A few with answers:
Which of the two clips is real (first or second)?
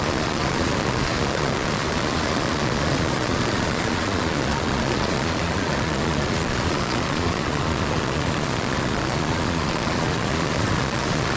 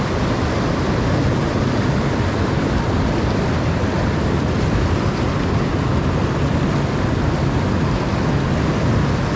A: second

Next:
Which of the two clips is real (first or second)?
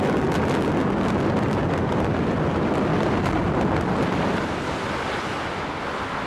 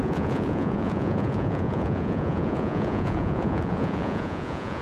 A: first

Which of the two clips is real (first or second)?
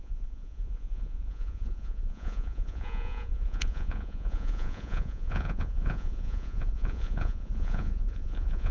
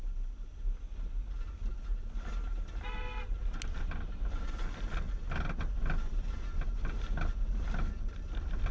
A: second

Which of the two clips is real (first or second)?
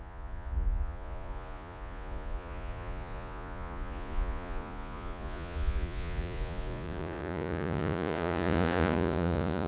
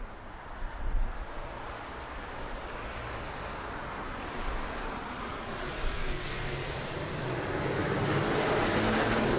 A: second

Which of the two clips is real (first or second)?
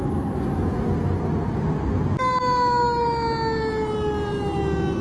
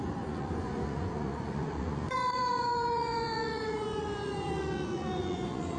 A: first